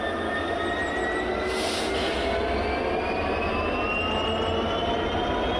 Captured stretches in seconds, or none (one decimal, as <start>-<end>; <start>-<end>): 0.0-5.6